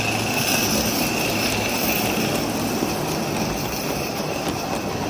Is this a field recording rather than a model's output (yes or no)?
yes